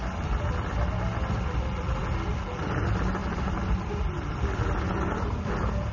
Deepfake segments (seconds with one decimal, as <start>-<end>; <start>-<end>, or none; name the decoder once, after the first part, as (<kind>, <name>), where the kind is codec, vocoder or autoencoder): 3.2-4.7 (vocoder, BigVGAN v2)